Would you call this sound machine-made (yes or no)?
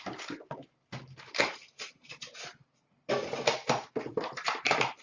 yes